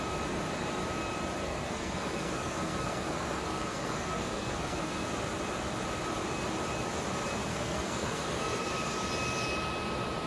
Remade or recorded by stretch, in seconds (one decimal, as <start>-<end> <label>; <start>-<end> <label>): 0.0-1.4 recorded; 1.4-5.1 remade; 5.1-7.5 recorded; 7.5-9.1 remade; 9.1-10.3 recorded